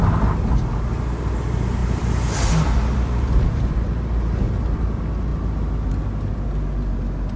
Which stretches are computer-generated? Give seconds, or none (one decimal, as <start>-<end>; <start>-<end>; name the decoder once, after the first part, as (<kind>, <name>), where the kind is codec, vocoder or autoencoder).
1.8-3.7 (vocoder, BigVGAN v2)